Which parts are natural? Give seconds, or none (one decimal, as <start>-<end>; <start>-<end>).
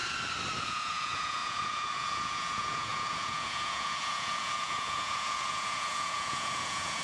0.0-0.6